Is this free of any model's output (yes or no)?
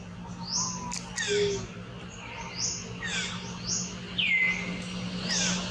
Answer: yes